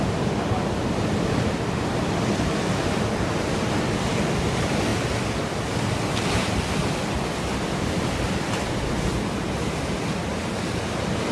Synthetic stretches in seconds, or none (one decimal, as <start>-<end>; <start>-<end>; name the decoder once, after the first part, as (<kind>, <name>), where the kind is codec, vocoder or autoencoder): none